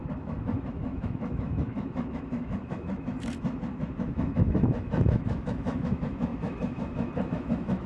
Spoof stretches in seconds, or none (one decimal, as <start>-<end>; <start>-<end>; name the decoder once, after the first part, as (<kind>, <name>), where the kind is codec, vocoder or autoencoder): 0.0-7.9 (autoencoder, DAC-VAE)

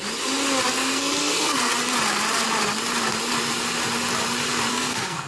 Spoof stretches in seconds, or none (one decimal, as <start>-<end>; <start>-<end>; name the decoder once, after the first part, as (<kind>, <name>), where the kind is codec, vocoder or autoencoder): 0.7-1.7 (codec, SNAC); 4.7-5.3